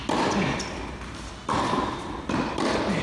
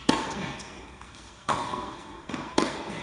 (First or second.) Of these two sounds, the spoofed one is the second